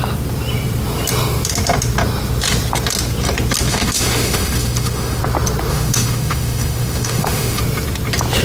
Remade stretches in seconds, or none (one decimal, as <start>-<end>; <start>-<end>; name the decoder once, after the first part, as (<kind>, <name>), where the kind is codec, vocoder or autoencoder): 3.7-5.2 (autoencoder, DAC-VAE); 5.7-7.6